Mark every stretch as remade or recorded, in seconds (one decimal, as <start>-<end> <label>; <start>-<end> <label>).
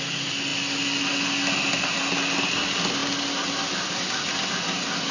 0.0-5.1 recorded